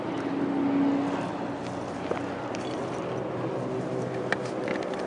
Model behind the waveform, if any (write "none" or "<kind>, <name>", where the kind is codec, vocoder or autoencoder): none